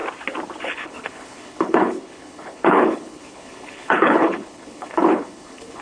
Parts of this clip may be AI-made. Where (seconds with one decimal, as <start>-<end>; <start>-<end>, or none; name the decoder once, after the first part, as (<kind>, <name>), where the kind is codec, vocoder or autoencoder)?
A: 0.6-5.8 (codec, HILCodec)